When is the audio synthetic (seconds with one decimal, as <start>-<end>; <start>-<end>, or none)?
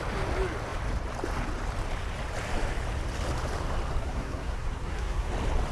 4.0-5.3